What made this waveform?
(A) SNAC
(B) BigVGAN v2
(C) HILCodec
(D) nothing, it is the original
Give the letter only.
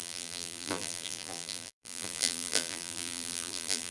B